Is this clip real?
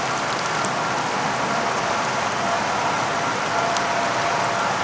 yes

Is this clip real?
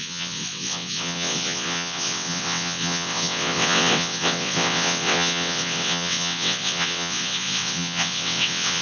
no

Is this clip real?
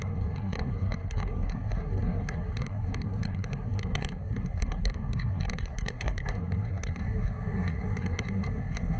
no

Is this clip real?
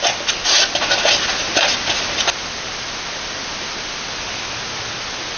yes